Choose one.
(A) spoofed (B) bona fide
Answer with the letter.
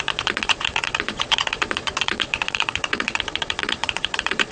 A